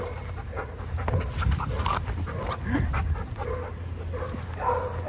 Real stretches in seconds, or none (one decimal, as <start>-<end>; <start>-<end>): 0.0-5.1